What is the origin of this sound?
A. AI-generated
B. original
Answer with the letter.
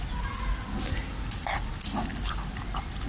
B